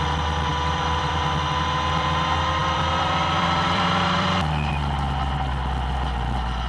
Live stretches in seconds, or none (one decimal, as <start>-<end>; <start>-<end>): 0.0-0.5; 1.2-2.6; 4.7-6.7